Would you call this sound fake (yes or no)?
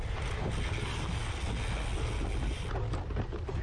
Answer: no